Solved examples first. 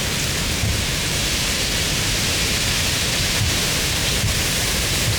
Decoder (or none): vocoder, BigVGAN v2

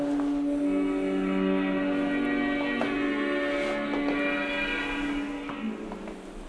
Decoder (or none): none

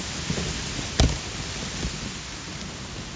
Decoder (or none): none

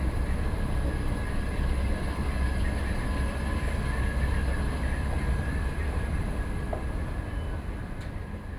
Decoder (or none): none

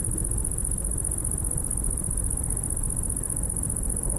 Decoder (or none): none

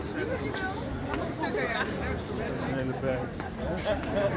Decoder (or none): vocoder, BigVGAN v2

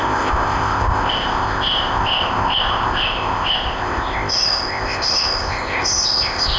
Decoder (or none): codec, ZipCodec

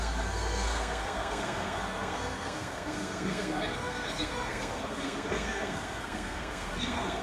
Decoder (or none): codec, SNAC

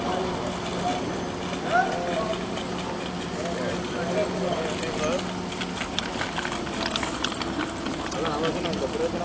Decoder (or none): none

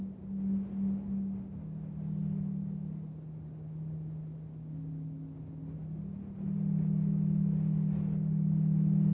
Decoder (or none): none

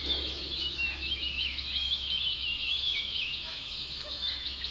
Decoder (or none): autoencoder, DAC-VAE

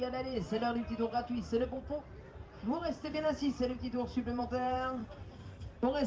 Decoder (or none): vocoder, BigVGAN v2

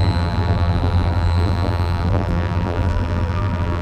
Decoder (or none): vocoder, BigVGAN v2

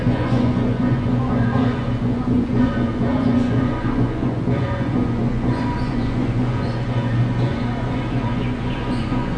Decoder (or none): vocoder, Vocos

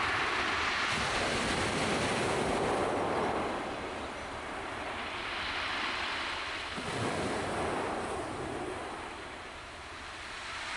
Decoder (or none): none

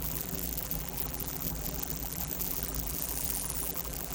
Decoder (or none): vocoder, BigVGAN v2